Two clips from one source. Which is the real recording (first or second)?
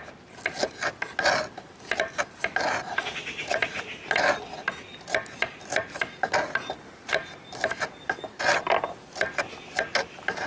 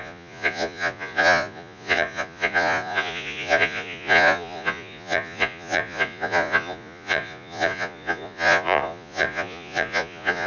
first